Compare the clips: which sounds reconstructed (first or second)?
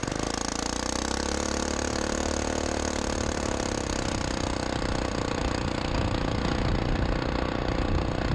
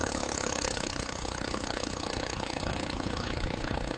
second